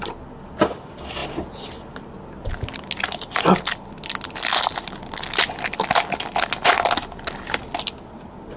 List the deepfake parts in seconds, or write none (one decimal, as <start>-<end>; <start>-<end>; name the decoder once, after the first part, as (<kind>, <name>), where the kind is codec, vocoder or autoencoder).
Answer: none